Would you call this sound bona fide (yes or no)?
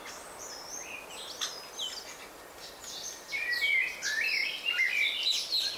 yes